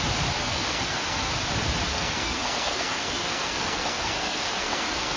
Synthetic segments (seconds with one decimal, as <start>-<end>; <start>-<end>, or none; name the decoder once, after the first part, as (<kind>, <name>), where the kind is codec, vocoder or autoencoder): 0.4-1.3 (codec, SNAC); 1.9-5.2